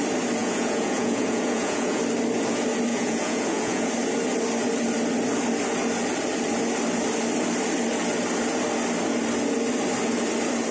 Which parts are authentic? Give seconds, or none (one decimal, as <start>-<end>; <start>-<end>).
0.0-0.4; 2.0-2.9; 3.9-10.7